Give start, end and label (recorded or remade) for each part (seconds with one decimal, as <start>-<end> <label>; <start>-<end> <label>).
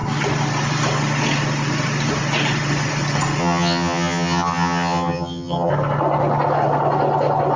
0.0-3.4 recorded; 3.4-5.7 remade; 5.7-7.6 recorded